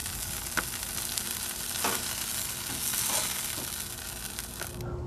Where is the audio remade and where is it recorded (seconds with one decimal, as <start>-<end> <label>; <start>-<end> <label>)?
0.0-5.1 recorded